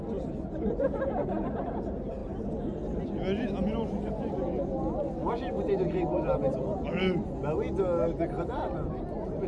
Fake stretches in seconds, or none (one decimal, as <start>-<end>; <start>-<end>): none